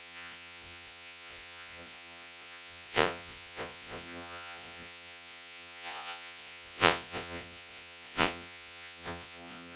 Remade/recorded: remade